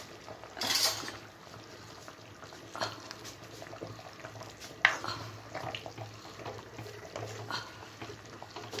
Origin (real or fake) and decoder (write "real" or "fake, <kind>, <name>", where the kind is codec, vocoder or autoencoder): real